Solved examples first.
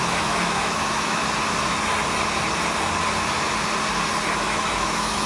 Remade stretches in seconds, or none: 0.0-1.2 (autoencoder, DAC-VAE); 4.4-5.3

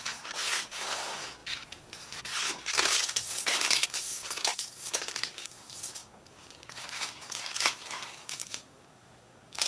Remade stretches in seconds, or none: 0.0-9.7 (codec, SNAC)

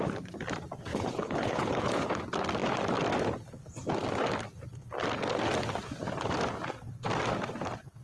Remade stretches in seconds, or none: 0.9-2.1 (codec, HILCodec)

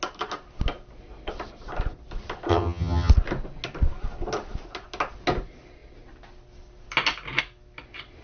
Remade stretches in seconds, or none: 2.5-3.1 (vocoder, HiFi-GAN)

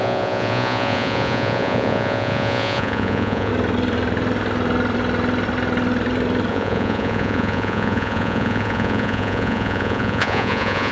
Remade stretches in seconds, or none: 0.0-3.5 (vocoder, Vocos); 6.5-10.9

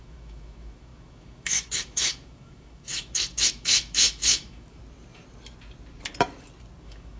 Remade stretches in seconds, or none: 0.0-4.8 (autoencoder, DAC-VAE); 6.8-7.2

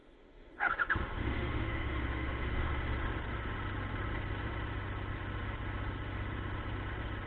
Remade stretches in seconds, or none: 0.0-2.7 (autoencoder, DAC-VAE)

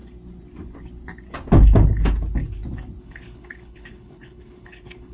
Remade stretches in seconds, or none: 3.0-5.1 (codec, HILCodec)